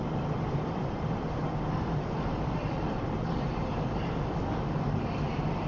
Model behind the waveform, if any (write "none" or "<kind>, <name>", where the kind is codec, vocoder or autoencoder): vocoder, BigVGAN v2